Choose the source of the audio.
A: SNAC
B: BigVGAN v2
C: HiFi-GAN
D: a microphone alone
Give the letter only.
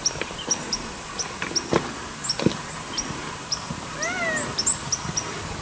D